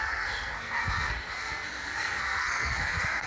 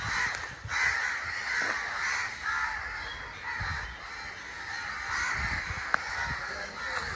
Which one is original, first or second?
second